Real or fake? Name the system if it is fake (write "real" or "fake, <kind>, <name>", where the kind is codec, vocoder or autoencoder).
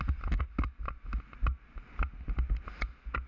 real